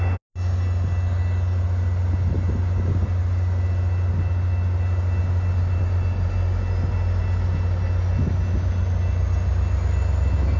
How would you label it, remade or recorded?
recorded